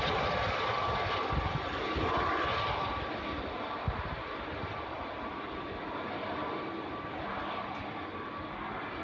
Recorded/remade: recorded